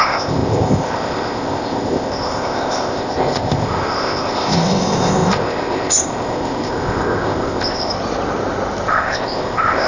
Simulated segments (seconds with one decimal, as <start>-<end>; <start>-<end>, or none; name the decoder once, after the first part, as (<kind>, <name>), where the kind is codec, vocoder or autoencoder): 0.0-7.9 (codec, ZipCodec); 8.9-9.9